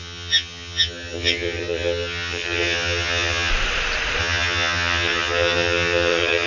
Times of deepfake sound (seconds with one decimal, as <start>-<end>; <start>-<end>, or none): 0.0-3.5; 4.2-6.5